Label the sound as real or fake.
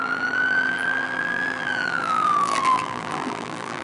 fake